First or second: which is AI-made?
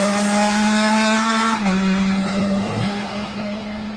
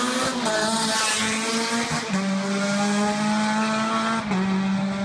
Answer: first